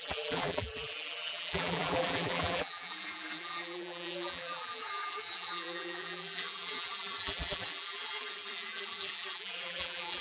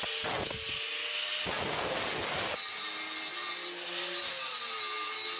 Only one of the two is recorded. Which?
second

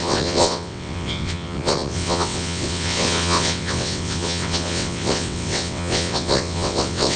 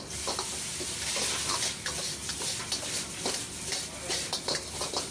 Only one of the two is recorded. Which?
second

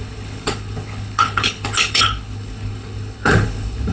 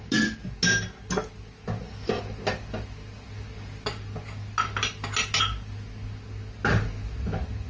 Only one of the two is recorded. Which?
second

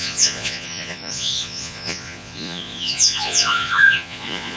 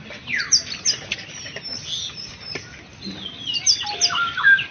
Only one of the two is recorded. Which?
second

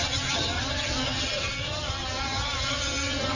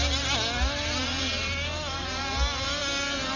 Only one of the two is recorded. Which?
second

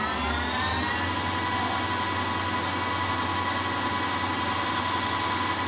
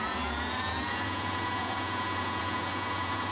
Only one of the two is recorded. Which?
first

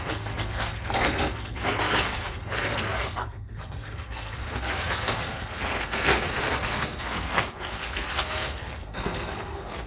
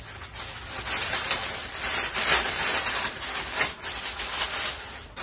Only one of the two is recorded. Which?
second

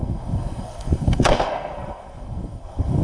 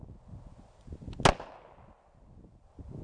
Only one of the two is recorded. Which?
second